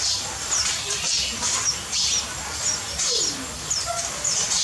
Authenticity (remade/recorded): recorded